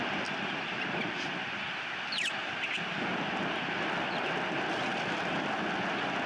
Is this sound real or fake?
real